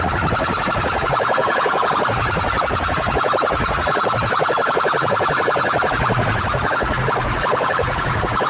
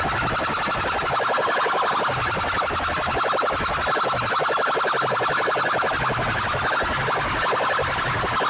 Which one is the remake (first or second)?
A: first